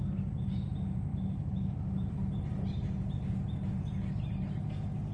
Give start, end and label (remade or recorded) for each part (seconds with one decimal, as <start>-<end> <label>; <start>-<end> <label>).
0.0-1.1 recorded; 1.1-2.1 remade; 2.1-5.1 recorded